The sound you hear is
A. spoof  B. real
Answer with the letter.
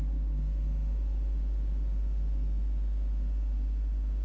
A